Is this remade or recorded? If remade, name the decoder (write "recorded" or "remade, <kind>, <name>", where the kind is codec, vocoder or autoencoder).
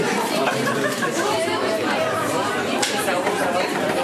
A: remade, vocoder, BigVGAN v2